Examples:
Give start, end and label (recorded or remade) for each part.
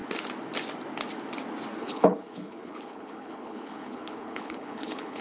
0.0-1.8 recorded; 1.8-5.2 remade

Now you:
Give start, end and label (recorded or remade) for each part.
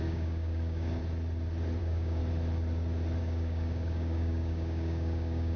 0.0-1.0 remade; 1.0-1.8 recorded; 1.8-2.2 remade; 2.2-3.2 recorded; 3.2-5.6 remade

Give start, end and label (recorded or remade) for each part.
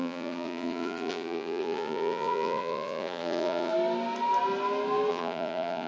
0.0-3.7 remade; 3.7-5.1 recorded; 5.1-5.9 remade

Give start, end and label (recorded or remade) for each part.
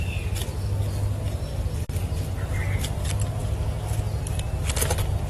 0.0-5.3 recorded